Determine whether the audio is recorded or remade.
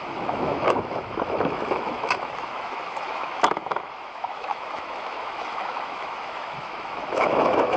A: remade